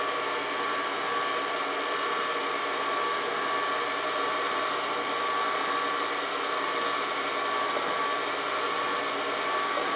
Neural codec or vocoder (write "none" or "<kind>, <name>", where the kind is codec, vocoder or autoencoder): none